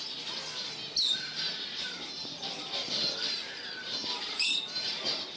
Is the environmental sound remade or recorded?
recorded